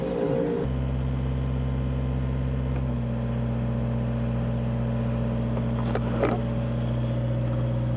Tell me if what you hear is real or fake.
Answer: real